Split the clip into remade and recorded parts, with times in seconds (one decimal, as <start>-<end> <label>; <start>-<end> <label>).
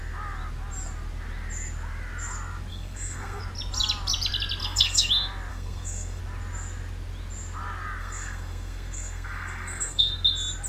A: 0.0-2.7 recorded; 2.7-3.4 remade; 3.4-4.6 recorded; 4.6-5.1 remade; 5.1-5.5 recorded; 5.5-6.2 remade; 6.2-8.0 recorded; 8.0-10.1 remade; 10.1-10.7 recorded